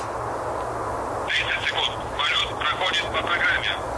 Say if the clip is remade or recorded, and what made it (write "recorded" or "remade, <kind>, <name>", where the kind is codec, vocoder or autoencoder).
recorded